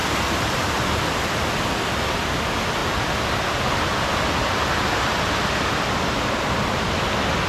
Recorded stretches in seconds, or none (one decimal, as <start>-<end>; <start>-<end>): 0.0-7.5